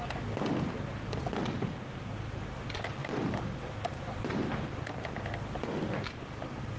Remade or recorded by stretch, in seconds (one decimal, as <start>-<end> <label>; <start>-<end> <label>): 0.0-0.9 recorded; 0.9-1.8 remade; 1.8-3.0 recorded; 3.0-5.2 remade; 5.2-6.8 recorded